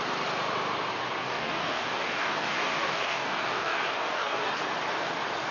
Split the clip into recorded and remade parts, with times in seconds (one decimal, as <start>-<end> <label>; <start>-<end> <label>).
0.0-1.2 recorded; 1.2-4.5 remade; 4.5-5.5 recorded